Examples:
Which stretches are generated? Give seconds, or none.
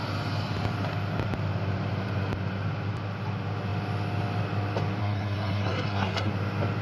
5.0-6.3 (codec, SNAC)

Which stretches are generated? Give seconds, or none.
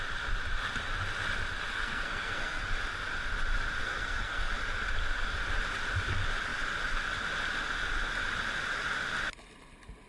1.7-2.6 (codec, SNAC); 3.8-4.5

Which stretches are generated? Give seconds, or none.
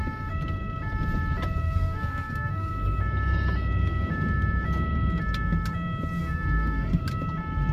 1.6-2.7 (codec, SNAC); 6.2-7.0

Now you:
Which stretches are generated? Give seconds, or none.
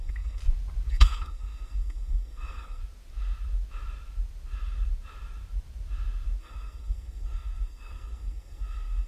0.0-0.4 (codec, SNAC); 0.9-2.8; 6.4-9.1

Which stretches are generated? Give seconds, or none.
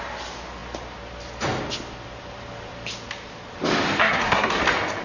4.0-4.6 (codec, SNAC)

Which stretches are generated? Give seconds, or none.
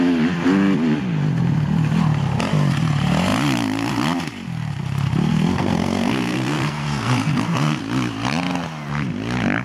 5.3-7.8 (codec, SNAC)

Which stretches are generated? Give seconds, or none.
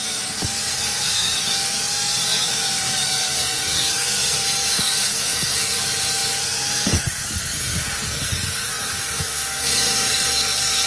0.0-10.9 (codec, SNAC)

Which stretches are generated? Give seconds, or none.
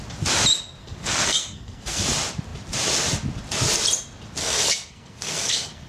0.8-2.0 (codec, SNAC); 4.4-5.9